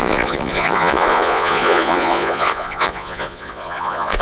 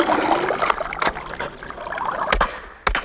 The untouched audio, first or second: second